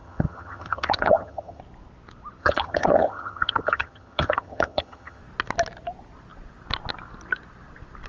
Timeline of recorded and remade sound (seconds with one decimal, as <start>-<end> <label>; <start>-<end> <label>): 0.0-1.6 remade; 1.6-2.4 recorded; 2.4-5.2 remade; 5.2-8.1 recorded